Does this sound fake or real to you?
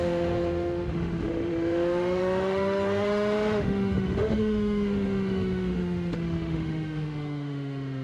fake